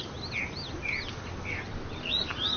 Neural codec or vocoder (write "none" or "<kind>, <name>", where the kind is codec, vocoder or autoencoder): none